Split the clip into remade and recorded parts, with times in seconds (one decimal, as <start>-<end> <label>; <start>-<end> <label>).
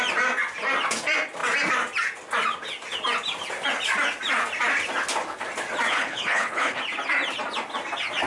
0.0-5.9 recorded; 5.9-6.8 remade; 6.8-8.3 recorded